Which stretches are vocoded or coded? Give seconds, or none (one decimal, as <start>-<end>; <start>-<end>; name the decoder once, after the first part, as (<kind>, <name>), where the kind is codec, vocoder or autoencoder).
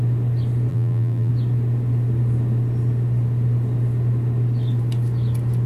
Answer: 0.7-1.3 (vocoder, BigVGAN v2)